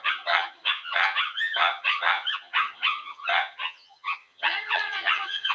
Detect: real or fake fake